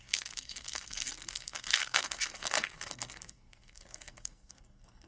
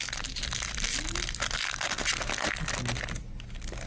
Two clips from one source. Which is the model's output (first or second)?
first